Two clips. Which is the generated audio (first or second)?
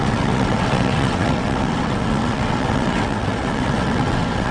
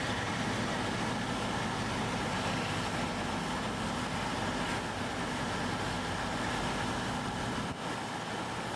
first